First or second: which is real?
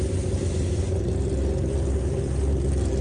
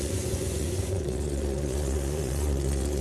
first